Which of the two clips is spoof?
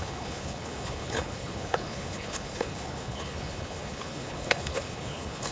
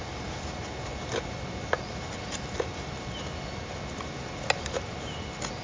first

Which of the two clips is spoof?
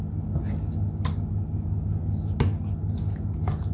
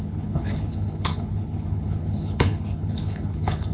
second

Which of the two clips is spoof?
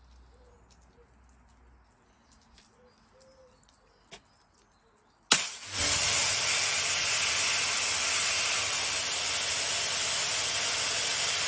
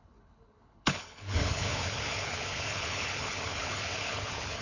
second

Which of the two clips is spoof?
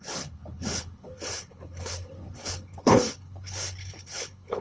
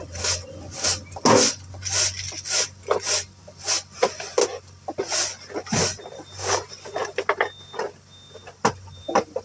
first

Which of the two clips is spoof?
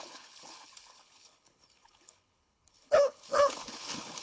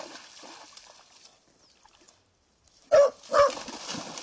first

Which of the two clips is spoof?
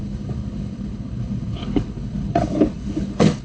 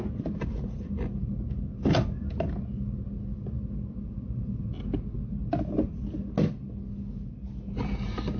first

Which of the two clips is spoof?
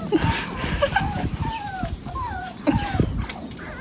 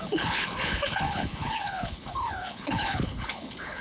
second